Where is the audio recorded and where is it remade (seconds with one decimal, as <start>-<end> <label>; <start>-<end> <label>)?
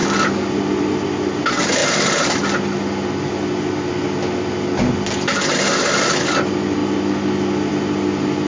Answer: 0.0-8.5 recorded